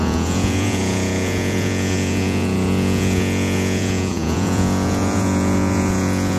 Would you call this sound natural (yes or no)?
no